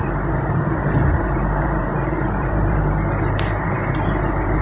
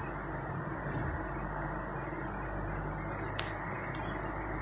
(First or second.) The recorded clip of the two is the second